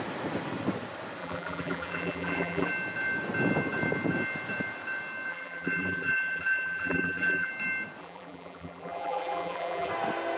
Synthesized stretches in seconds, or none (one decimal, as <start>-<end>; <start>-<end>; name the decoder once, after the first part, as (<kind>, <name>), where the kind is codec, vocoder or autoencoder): 1.2-2.7 (vocoder, BigVGAN v2); 5.3-7.5; 8.0-9.9